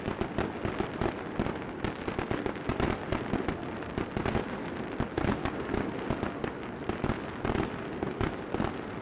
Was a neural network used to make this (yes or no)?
no